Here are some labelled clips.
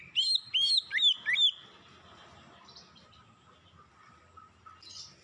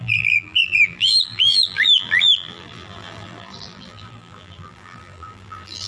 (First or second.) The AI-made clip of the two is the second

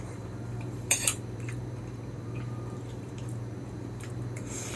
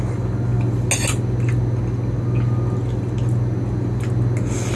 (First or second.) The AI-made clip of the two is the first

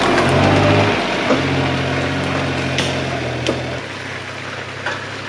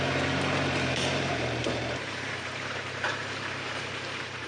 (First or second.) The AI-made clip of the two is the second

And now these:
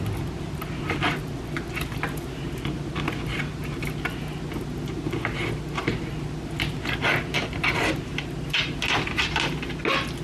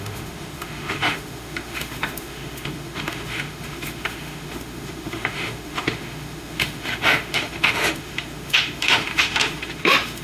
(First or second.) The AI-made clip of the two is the second